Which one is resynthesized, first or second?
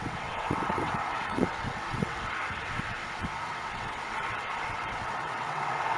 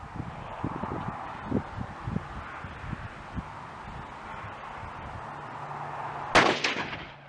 first